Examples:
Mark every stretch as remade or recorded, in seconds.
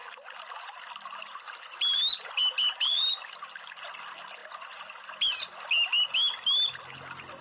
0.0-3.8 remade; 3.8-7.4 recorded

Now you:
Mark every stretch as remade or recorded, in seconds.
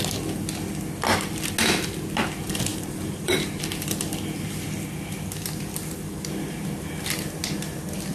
0.0-2.7 recorded; 2.7-3.6 remade; 3.6-8.1 recorded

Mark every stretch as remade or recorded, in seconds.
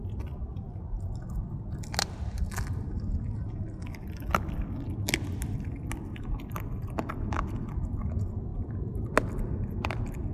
0.0-8.5 recorded; 8.5-9.1 remade; 9.1-10.3 recorded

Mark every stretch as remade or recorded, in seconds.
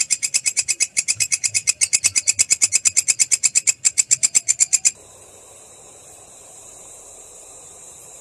0.0-1.6 remade; 1.6-6.5 recorded; 6.5-8.2 remade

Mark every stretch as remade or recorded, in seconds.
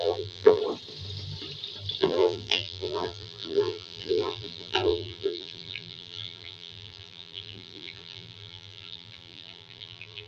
0.0-0.6 remade; 0.6-2.0 recorded; 2.0-10.3 remade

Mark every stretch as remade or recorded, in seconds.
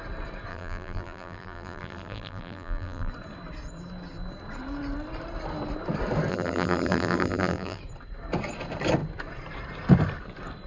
0.0-0.5 recorded; 0.5-3.1 remade; 3.1-6.3 recorded; 6.3-7.8 remade; 7.8-10.7 recorded